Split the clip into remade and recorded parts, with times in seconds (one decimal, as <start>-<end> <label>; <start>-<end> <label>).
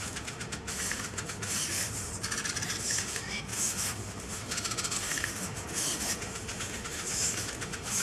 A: 0.0-2.1 remade; 2.1-2.8 recorded; 2.8-8.0 remade